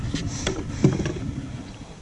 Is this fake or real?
real